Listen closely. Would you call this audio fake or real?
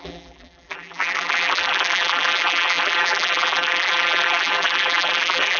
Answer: fake